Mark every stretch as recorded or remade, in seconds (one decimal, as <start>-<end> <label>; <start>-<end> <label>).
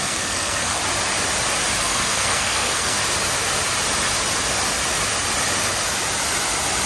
0.0-0.8 remade; 0.8-1.8 recorded; 1.8-3.0 remade; 3.0-6.9 recorded